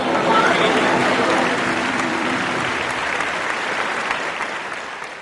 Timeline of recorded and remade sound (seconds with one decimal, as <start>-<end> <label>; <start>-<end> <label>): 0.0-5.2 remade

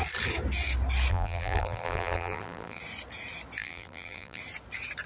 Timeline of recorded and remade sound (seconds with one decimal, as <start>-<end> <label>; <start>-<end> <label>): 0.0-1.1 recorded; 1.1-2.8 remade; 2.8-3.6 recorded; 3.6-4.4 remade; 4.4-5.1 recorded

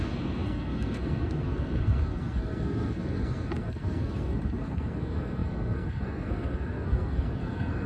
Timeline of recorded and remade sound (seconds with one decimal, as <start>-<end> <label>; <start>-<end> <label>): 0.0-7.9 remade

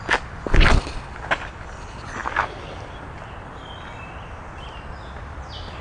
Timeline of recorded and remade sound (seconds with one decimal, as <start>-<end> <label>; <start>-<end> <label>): 0.0-5.8 recorded

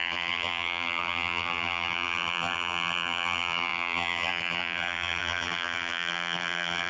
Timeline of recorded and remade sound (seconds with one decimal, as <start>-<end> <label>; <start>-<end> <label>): 0.0-6.9 remade

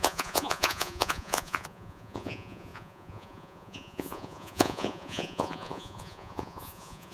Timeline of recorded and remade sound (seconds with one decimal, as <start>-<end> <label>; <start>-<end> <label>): 0.0-7.1 remade